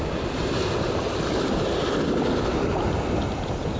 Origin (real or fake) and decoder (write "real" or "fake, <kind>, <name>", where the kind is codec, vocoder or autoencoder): real